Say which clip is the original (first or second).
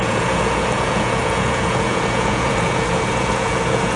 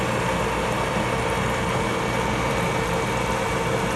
second